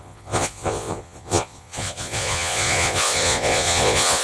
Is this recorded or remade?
remade